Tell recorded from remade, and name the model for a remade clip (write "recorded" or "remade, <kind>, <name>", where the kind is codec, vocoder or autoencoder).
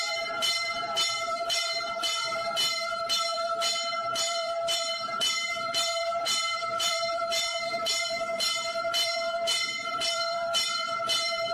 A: remade, vocoder, BigVGAN v2